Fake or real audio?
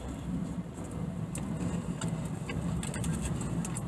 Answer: real